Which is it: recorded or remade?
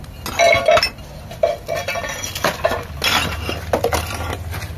recorded